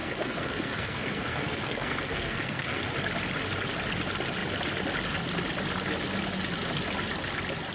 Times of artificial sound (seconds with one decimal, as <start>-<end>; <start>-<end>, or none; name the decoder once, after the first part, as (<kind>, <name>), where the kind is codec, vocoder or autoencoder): 0.0-2.8 (codec, SNAC)